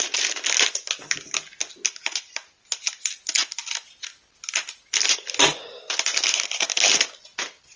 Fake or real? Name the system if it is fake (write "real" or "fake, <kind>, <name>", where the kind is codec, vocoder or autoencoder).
real